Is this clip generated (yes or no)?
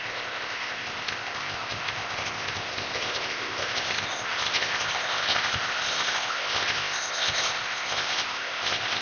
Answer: yes